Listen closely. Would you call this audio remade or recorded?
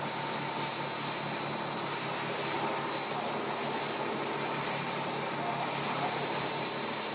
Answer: recorded